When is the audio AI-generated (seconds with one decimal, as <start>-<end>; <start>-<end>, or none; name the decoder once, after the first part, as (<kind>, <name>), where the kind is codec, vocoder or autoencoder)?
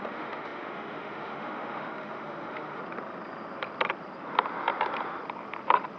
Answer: 0.0-2.8 (autoencoder, DAC-VAE)